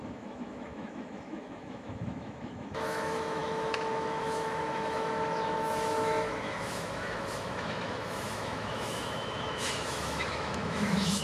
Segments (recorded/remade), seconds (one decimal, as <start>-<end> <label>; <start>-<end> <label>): 0.0-11.2 remade